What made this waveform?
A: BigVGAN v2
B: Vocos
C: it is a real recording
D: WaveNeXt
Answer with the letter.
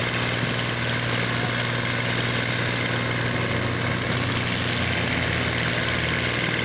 C